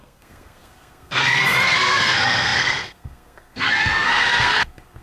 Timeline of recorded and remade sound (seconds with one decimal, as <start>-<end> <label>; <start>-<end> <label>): 0.0-5.0 remade